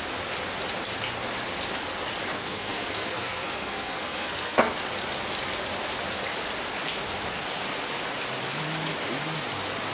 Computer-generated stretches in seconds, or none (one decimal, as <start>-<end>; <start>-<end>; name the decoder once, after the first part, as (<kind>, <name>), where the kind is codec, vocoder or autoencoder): 2.3-4.7 (codec, SNAC)